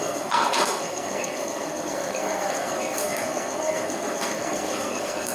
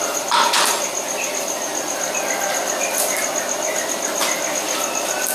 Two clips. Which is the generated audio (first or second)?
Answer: first